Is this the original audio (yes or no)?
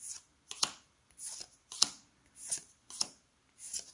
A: yes